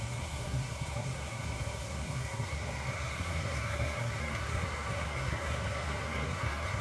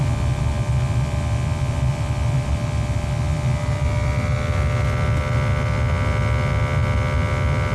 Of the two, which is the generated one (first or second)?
first